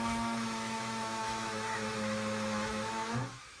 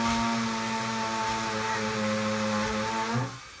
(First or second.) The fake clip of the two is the first